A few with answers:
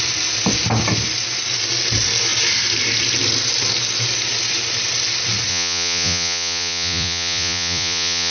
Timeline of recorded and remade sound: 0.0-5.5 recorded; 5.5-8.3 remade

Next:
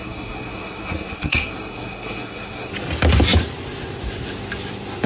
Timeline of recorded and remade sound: 0.0-2.7 remade; 2.7-5.1 recorded

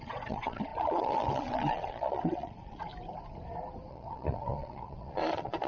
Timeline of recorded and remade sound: 0.0-2.9 remade; 2.9-3.9 recorded; 3.9-5.7 remade

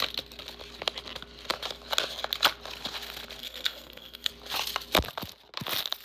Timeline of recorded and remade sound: 0.0-3.4 recorded; 3.4-4.3 remade; 4.3-6.0 recorded

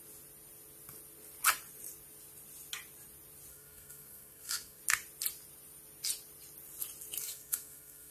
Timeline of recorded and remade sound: 0.0-3.5 recorded; 3.5-4.8 remade; 4.8-7.2 recorded; 7.2-8.1 remade

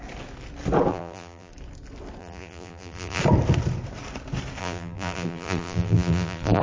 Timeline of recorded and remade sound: 0.0-0.9 recorded; 0.9-1.5 remade; 1.5-2.2 recorded; 2.2-3.2 remade; 3.2-4.6 recorded; 4.6-6.6 remade

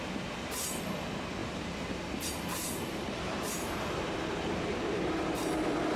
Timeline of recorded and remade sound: 0.0-1.4 recorded; 1.4-5.0 remade; 5.0-6.0 recorded

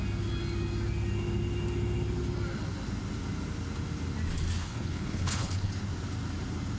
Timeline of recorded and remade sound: 0.0-4.6 recorded; 4.6-5.7 remade; 5.7-6.8 recorded